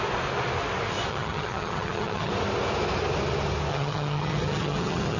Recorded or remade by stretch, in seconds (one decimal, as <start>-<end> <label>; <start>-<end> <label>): 0.0-1.1 recorded; 1.1-2.3 remade; 2.3-3.7 recorded; 3.7-5.2 remade